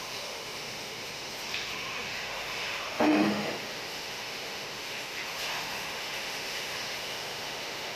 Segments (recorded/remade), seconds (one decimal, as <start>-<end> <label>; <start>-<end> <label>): 0.0-8.0 remade